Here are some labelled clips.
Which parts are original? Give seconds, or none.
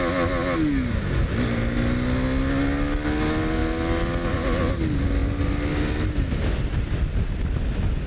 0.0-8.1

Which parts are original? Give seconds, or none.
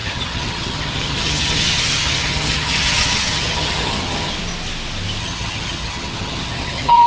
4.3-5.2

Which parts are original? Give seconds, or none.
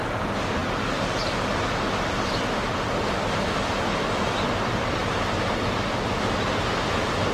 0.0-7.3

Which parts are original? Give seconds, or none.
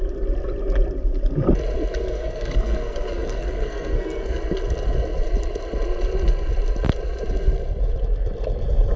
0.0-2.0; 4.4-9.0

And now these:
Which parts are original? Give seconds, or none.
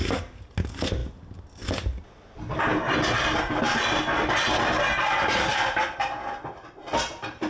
0.0-7.5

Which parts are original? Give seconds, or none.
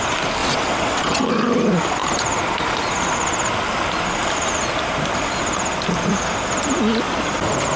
0.0-0.4; 1.3-7.8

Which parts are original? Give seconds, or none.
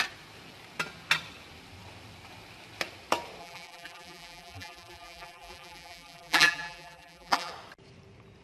0.0-3.4; 7.5-8.4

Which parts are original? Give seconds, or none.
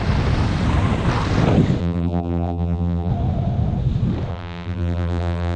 0.0-1.8; 3.1-4.3